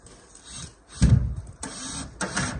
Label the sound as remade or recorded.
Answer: recorded